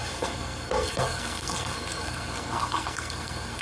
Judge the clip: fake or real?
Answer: fake